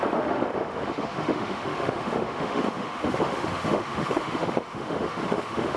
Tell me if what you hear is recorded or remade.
remade